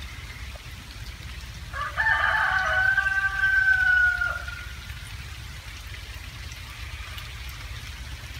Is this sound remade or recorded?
recorded